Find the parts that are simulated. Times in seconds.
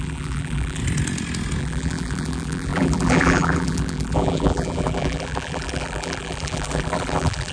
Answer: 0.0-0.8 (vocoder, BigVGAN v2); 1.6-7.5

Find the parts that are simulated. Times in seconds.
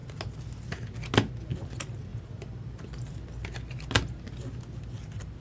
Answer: 2.1-3.1 (vocoder, BigVGAN v2)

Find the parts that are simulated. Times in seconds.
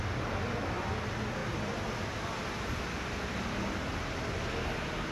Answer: 1.4-4.5 (vocoder, BigVGAN v2)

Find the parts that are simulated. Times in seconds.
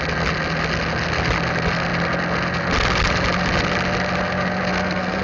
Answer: 4.7-5.2 (codec, SNAC)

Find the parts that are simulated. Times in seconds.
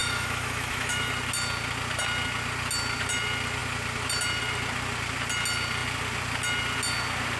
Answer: 0.0-1.1 (autoencoder, DAC-VAE)